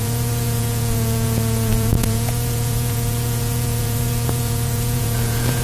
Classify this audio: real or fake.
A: fake